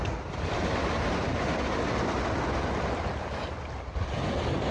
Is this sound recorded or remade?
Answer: recorded